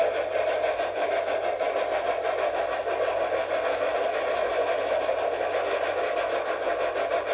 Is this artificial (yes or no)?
no